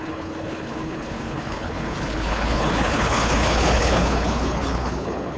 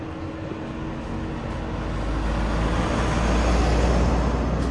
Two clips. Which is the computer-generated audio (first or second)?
first